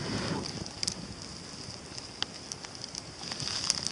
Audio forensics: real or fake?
real